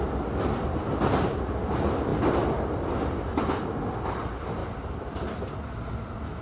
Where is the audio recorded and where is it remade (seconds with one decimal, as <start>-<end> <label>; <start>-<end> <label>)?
0.0-6.4 recorded